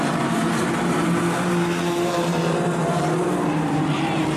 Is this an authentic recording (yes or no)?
no